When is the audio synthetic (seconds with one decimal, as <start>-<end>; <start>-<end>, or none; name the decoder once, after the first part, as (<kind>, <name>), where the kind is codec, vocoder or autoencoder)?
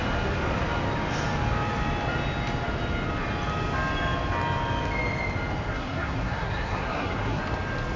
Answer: 5.7-7.4 (codec, SNAC)